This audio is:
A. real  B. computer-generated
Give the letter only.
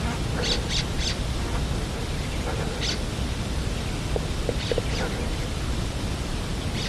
A